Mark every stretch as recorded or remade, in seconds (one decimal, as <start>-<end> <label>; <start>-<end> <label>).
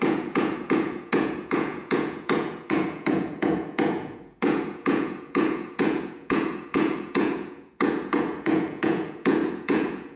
0.0-10.2 remade